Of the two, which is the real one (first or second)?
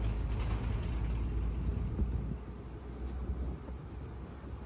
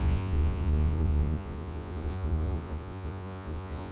first